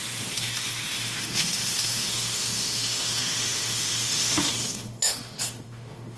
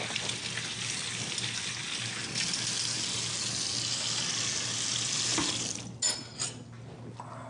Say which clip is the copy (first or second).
first